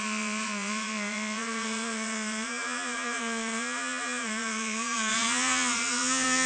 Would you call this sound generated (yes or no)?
yes